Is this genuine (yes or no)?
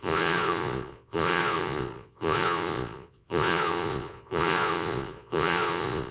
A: no